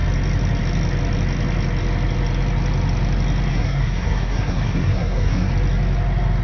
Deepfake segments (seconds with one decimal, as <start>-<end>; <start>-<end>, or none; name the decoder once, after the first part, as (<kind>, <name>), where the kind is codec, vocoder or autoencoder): 3.5-5.5 (codec, SNAC)